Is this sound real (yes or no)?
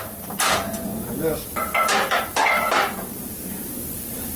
no